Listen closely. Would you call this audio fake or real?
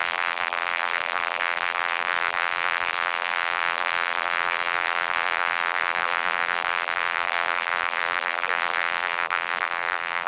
fake